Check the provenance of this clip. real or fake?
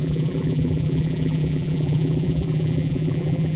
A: fake